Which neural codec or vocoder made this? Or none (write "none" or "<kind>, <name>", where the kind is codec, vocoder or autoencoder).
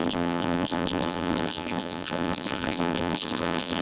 vocoder, BigVGAN v2